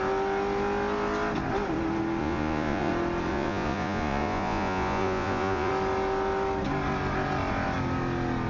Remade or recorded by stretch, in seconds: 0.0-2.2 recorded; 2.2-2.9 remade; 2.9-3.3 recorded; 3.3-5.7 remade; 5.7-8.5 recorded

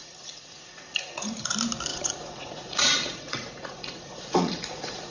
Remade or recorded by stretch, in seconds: 0.0-1.5 remade; 1.5-1.9 recorded; 1.9-5.1 remade

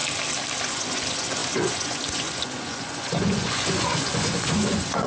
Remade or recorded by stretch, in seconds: 0.0-0.6 recorded; 0.6-5.1 remade

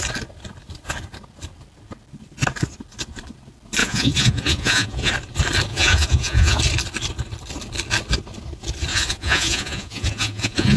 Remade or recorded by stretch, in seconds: 0.0-3.8 recorded; 3.8-5.1 remade; 5.1-5.7 recorded; 5.7-6.6 remade; 6.6-8.9 recorded; 8.9-10.8 remade

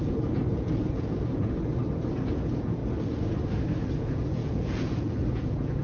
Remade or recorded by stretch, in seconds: 0.0-1.7 remade; 1.7-2.3 recorded; 2.3-2.8 remade; 2.8-3.8 recorded; 3.8-5.8 remade